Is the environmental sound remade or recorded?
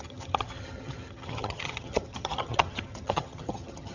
remade